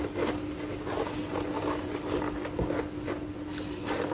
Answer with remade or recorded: recorded